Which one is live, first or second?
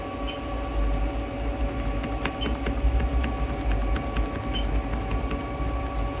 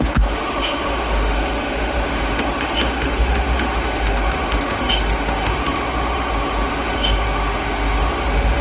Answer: first